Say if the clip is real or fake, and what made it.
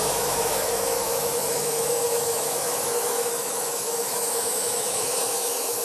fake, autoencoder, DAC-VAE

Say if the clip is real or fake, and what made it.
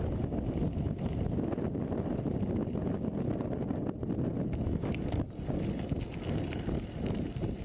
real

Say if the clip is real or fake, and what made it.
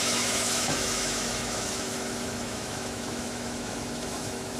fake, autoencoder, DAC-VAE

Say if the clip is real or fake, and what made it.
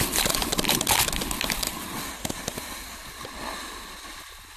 real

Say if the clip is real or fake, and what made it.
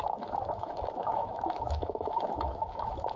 fake, autoencoder, DAC-VAE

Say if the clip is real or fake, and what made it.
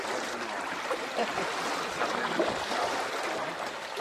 real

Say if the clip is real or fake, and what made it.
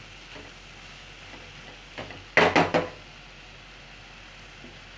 real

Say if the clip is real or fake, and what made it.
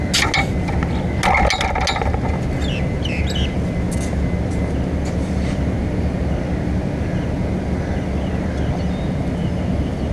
real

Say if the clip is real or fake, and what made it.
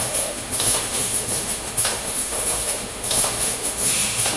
fake, autoencoder, DAC-VAE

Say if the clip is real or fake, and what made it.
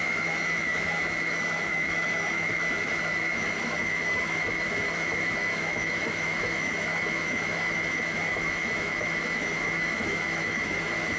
fake, autoencoder, DAC-VAE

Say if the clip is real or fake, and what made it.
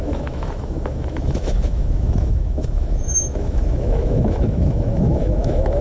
fake, autoencoder, DAC-VAE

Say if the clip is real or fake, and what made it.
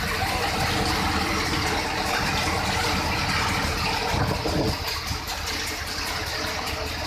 real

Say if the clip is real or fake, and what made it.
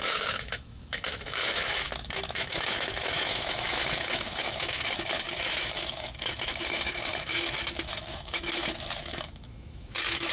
fake, autoencoder, DAC-VAE